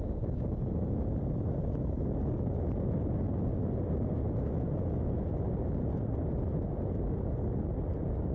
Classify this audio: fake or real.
real